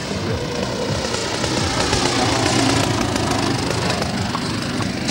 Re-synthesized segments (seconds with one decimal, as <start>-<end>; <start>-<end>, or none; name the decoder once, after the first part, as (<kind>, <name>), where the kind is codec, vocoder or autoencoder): 0.0-0.6 (vocoder, BigVGAN v2)